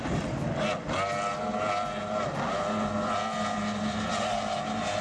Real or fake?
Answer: real